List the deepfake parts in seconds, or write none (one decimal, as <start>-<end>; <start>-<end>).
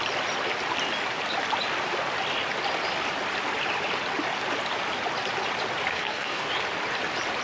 5.9-6.5